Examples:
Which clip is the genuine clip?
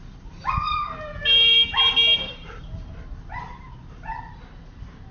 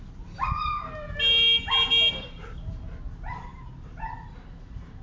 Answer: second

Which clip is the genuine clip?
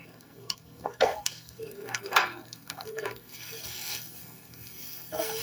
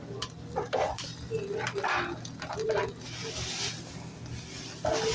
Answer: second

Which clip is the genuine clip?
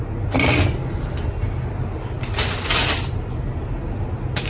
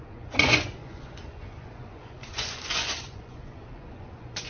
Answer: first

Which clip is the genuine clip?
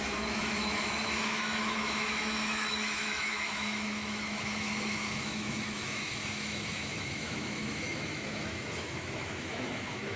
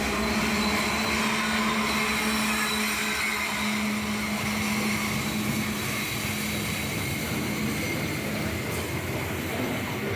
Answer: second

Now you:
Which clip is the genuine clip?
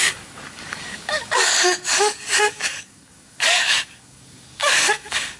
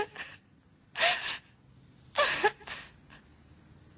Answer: second